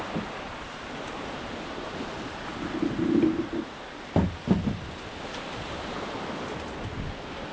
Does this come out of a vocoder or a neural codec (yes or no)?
no